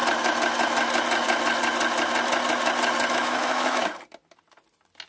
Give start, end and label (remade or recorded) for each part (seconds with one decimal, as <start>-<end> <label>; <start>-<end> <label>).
0.0-3.1 recorded; 3.1-3.8 remade; 3.8-5.1 recorded